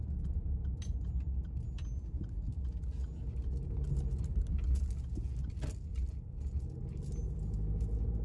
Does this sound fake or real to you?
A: real